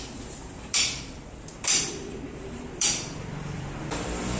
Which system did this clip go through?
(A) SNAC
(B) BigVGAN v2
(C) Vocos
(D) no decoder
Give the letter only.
B